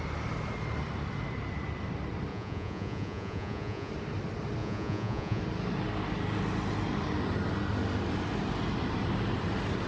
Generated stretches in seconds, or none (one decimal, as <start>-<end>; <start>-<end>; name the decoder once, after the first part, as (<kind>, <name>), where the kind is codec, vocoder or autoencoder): 2.3-3.9 (vocoder, Vocos); 4.6-5.4